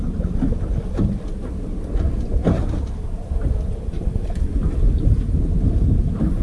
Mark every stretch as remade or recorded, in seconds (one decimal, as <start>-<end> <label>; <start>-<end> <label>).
0.0-1.4 recorded; 1.4-3.4 remade; 3.4-6.4 recorded